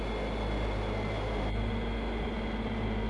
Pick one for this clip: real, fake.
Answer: real